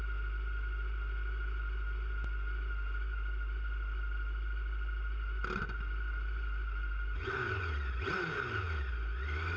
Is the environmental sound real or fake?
real